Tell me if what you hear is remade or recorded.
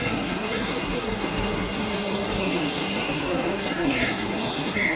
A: remade